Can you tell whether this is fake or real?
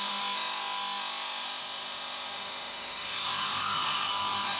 fake